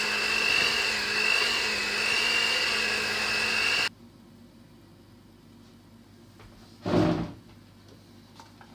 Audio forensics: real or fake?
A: real